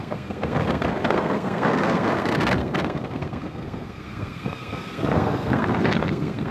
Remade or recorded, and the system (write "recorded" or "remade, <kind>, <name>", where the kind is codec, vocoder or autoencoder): remade, codec, SNAC